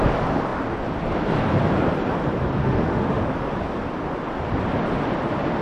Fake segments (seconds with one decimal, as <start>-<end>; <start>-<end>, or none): 2.6-3.2